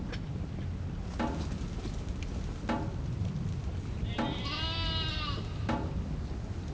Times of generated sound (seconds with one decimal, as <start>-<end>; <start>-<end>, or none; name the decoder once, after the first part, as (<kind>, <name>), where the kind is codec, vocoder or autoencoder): none